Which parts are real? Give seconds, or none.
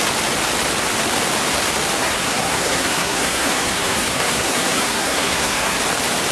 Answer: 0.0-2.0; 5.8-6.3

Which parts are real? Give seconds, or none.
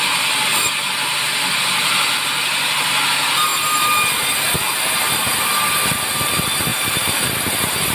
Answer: 0.0-7.9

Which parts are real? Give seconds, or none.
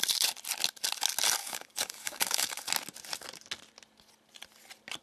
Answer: 0.0-1.4; 2.7-5.0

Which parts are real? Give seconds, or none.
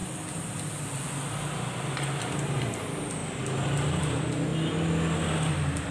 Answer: 0.0-5.9